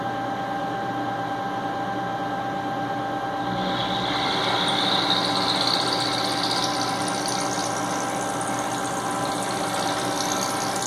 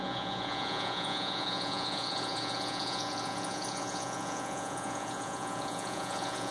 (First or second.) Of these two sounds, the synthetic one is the second